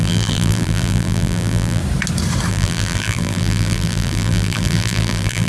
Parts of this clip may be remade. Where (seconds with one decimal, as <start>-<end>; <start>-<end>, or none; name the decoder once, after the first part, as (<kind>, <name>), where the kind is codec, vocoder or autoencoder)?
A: 0.0-1.8 (vocoder, BigVGAN v2); 2.5-5.5